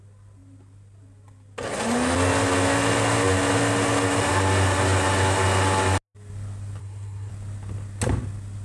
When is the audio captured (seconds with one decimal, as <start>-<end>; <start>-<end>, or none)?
0.0-6.8; 7.3-8.6